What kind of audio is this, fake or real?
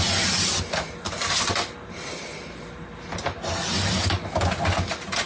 real